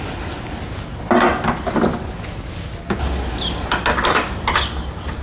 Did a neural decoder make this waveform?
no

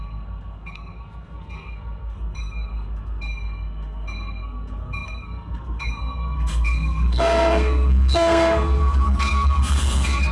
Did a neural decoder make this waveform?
yes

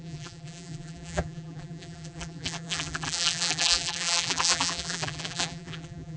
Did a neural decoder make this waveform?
yes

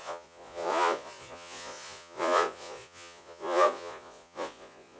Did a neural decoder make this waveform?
yes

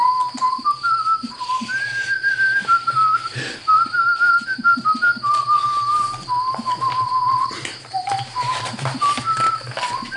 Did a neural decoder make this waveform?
no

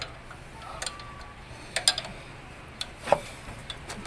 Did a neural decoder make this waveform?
no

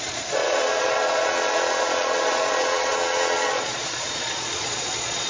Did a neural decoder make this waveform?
yes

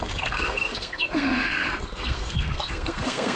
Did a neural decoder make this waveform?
yes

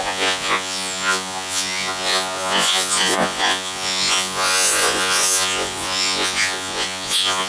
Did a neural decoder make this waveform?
yes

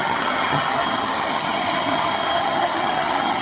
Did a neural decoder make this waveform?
yes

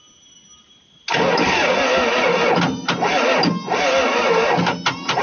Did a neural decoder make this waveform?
no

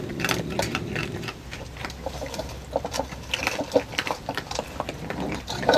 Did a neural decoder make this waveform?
yes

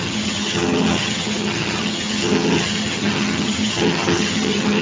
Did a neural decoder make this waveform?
yes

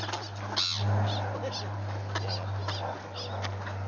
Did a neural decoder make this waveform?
no